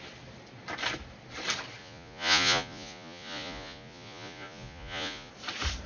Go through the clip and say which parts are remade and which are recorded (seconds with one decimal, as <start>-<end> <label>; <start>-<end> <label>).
0.0-1.8 recorded; 1.8-5.3 remade; 5.3-5.9 recorded